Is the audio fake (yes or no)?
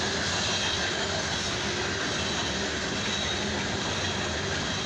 no